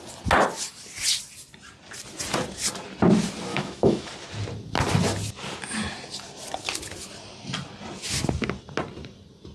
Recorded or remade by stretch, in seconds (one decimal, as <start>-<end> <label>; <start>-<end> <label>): 0.0-3.5 recorded; 3.5-4.1 remade; 4.1-9.5 recorded